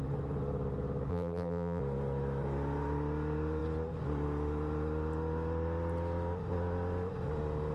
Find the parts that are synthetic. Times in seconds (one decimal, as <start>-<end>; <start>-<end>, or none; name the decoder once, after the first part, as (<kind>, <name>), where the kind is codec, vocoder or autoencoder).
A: 1.1-1.8 (vocoder, BigVGAN v2)